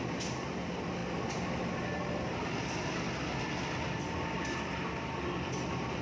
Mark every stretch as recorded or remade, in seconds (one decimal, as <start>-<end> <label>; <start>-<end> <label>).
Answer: 0.0-1.0 remade; 1.0-4.0 recorded; 4.0-6.0 remade